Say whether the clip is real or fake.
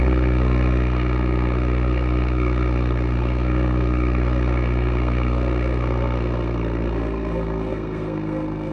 fake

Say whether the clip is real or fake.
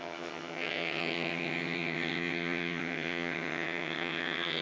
fake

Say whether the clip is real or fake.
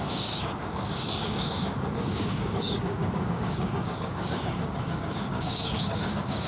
fake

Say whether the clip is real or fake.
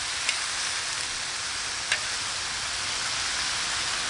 real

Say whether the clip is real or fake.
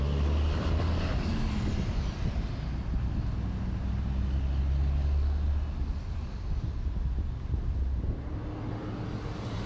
real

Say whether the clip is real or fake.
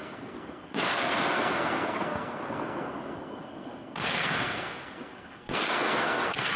fake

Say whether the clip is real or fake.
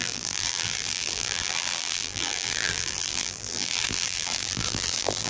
fake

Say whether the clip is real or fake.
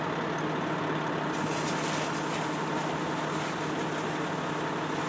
real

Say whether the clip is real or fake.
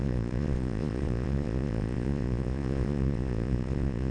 fake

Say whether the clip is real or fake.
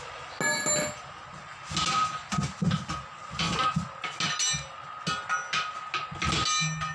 real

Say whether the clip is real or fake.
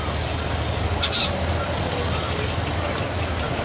real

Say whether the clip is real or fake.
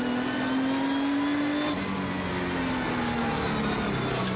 real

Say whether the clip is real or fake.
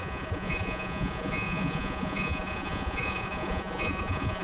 fake